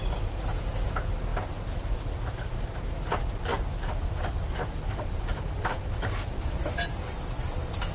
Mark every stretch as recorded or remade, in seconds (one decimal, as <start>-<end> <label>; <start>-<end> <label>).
0.0-3.5 recorded; 3.5-6.7 remade; 6.7-7.9 recorded